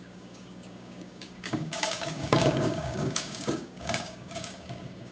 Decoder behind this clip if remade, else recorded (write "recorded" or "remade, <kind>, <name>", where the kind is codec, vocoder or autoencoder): remade, codec, DAC